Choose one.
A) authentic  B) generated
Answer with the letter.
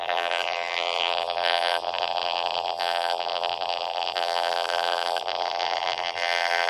B